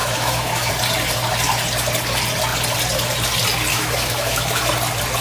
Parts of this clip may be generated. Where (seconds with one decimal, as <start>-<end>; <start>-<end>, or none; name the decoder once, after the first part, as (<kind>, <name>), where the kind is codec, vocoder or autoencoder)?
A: 0.0-0.7 (autoencoder, DAC-VAE); 3.7-4.6